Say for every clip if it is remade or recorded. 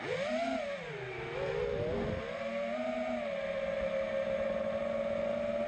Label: recorded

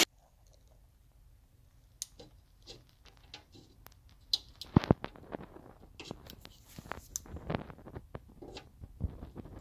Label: recorded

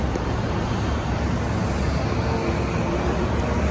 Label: recorded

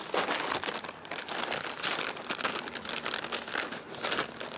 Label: recorded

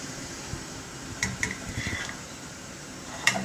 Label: remade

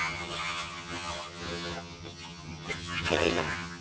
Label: remade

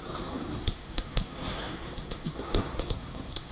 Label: remade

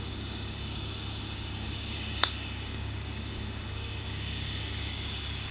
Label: remade